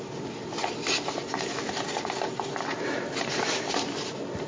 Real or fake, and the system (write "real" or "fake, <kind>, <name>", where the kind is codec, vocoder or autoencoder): real